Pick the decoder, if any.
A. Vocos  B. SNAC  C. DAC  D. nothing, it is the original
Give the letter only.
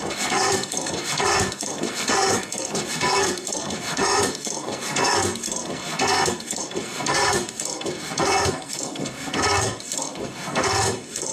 B